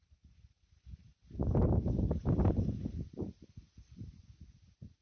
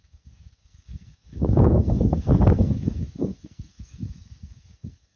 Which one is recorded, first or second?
first